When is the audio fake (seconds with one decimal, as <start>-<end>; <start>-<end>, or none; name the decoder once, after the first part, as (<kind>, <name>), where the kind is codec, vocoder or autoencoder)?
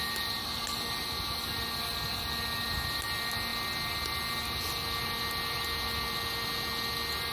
none